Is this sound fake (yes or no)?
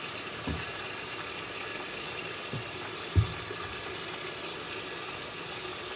no